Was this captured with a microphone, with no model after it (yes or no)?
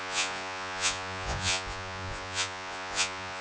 no